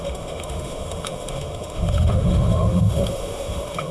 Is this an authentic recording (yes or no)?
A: no